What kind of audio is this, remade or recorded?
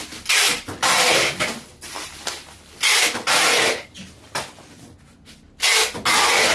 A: recorded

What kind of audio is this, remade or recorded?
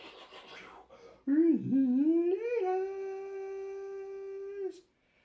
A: recorded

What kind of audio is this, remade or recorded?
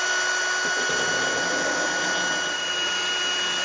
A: recorded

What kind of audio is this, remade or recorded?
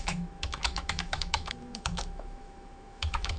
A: remade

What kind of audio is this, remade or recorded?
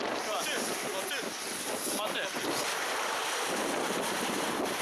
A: recorded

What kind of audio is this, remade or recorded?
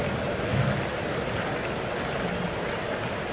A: recorded